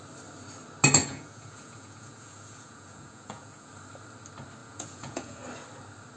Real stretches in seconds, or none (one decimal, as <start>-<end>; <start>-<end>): 0.0-1.0; 3.7-4.6; 5.4-6.2